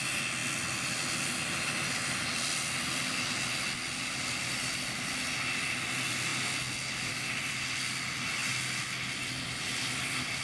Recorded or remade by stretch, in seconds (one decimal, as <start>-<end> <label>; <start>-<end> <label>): 0.0-10.4 recorded